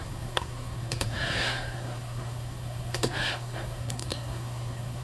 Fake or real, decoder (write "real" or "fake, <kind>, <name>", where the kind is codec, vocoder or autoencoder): fake, codec, SNAC